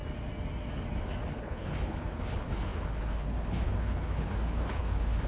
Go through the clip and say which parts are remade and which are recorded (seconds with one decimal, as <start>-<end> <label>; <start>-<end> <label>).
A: 0.0-1.3 recorded; 1.3-5.3 remade

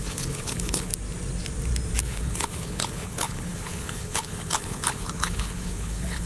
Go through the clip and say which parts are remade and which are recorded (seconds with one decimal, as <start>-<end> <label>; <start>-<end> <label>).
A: 0.0-0.9 remade; 0.9-2.0 recorded; 2.0-6.3 remade